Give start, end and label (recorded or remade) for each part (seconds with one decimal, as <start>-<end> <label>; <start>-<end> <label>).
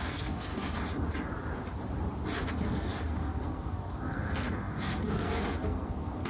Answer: 0.0-0.5 remade; 0.5-2.5 recorded; 2.5-6.3 remade